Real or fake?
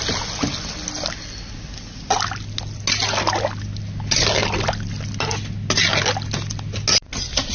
real